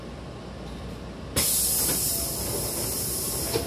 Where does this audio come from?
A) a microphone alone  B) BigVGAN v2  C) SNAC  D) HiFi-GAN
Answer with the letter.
A